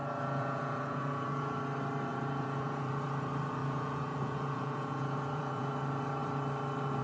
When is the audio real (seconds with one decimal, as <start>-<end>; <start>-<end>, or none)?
1.6-2.1; 2.9-3.6; 5.7-7.0